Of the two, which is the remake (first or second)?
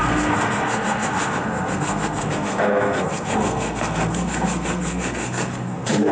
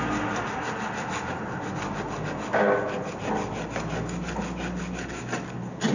first